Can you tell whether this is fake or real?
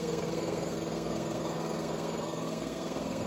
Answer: fake